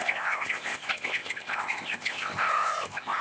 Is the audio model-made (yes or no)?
yes